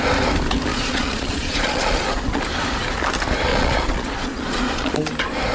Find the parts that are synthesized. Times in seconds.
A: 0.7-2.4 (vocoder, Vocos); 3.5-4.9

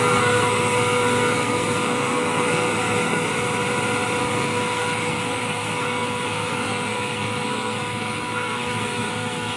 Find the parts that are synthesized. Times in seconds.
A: 0.0-3.3 (codec, SNAC); 4.2-9.6

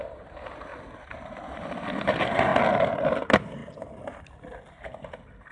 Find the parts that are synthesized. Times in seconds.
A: 0.0-0.7 (vocoder, BigVGAN v2); 1.6-2.5; 3.1-3.6; 4.7-5.5